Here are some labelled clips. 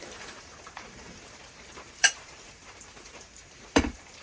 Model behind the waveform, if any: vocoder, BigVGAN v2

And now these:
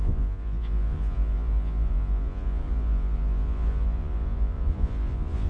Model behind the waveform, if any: vocoder, Vocos